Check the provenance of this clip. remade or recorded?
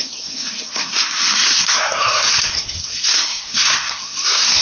remade